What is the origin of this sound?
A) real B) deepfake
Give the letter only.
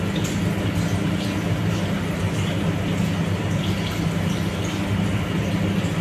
A